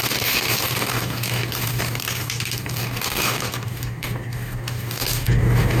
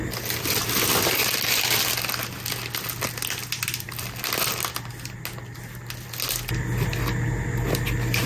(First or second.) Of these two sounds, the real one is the second